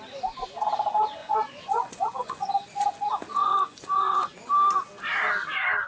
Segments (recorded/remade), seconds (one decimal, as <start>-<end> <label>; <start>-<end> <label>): 0.0-1.2 recorded; 1.2-2.5 remade; 2.5-3.4 recorded; 3.4-4.5 remade; 4.5-5.9 recorded